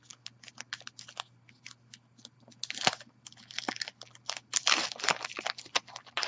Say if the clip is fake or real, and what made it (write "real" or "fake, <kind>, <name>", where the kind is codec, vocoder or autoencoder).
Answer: real